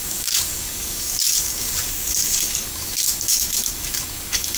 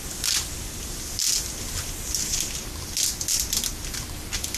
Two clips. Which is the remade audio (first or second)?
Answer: first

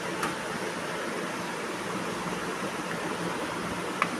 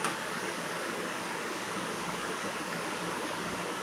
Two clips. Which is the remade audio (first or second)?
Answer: second